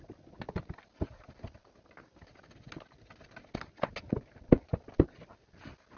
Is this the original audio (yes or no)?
yes